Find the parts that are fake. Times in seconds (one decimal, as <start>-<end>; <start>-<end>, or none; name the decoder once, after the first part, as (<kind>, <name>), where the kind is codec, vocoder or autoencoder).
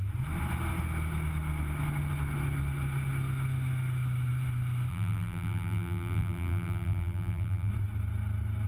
4.9-7.7 (vocoder, BigVGAN v2)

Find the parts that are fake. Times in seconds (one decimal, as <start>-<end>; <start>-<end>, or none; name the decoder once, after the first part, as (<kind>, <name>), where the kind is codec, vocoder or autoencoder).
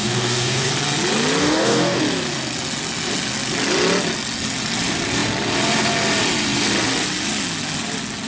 0.0-0.7 (codec, DAC); 1.4-2.0